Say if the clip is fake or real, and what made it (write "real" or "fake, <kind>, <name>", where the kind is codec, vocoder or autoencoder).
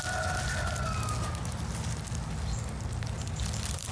real